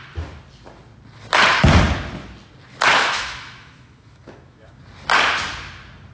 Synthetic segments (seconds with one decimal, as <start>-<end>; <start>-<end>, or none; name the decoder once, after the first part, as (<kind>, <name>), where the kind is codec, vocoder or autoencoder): 3.0-4.8 (autoencoder, DAC-VAE)